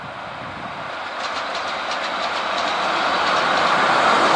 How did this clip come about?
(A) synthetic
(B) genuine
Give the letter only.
B